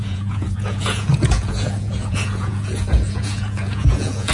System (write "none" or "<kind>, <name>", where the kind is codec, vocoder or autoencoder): vocoder, Vocos